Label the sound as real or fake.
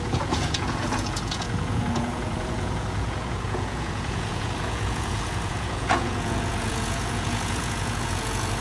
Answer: fake